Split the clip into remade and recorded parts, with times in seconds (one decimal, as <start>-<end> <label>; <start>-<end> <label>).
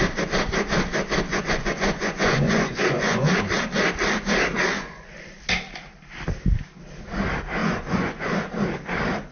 0.0-1.3 recorded; 1.3-3.3 remade; 3.3-4.7 recorded; 4.7-5.2 remade; 5.2-7.6 recorded; 7.6-8.5 remade; 8.5-9.3 recorded